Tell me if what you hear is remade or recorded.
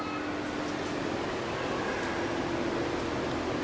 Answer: recorded